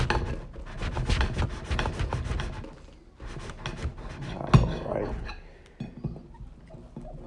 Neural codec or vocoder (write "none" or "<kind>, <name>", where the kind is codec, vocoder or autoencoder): none